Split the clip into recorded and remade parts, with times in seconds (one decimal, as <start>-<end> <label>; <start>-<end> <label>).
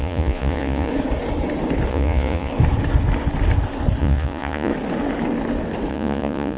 0.0-0.9 remade; 0.9-1.9 recorded; 1.9-2.5 remade; 2.5-4.0 recorded; 4.0-4.7 remade; 4.7-5.9 recorded; 5.9-6.6 remade